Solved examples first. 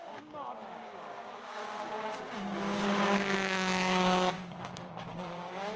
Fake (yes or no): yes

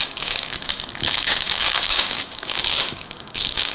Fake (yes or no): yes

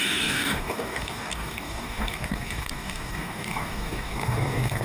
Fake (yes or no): yes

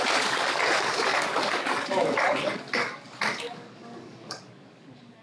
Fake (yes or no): yes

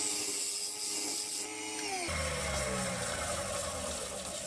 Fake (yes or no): no